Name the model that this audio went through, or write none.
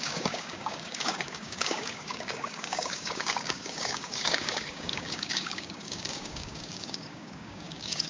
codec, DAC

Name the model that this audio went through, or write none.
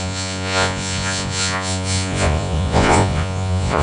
vocoder, Vocos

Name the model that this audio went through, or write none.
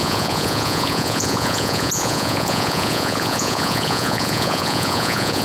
vocoder, Vocos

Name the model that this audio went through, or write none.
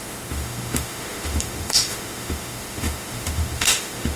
autoencoder, DAC-VAE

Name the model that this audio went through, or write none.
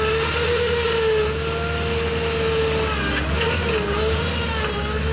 none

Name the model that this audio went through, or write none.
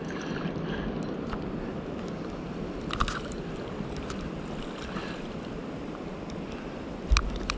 none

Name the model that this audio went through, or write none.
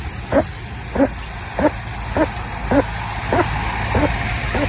none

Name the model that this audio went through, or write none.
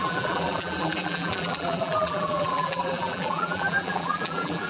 vocoder, BigVGAN v2